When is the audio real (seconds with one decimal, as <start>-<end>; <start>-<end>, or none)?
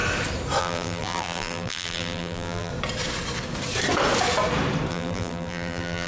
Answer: 0.0-0.6; 2.7-4.9